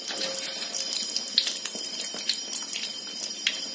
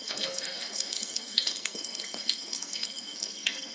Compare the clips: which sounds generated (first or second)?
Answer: second